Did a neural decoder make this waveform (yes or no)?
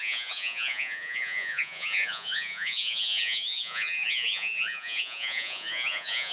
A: yes